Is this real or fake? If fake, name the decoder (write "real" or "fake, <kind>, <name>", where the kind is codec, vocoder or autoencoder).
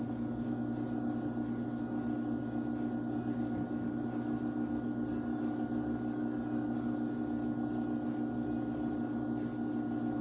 real